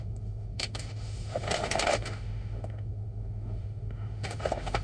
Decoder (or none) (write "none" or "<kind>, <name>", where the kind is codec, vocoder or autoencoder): autoencoder, DAC-VAE